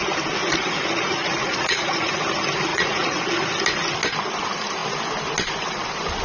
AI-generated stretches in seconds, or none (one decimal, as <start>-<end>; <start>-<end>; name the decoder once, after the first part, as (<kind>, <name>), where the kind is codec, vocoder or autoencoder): 0.4-2.1 (vocoder, Vocos); 2.7-3.3